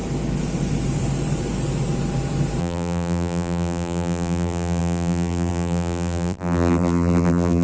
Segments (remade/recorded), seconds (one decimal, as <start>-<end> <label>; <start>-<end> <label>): 0.0-2.6 recorded; 2.6-7.6 remade